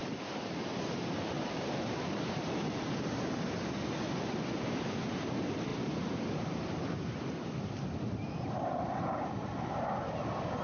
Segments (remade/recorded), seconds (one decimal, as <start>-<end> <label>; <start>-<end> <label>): 0.0-1.2 remade; 1.2-5.7 recorded; 5.7-9.0 remade; 9.0-9.5 recorded; 9.5-10.2 remade; 10.2-10.6 recorded